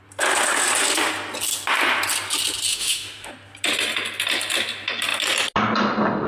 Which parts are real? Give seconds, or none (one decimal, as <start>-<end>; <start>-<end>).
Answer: 0.0-2.7; 3.3-6.3